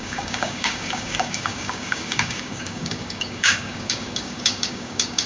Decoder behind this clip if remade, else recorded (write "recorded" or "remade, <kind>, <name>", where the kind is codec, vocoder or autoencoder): remade, codec, DAC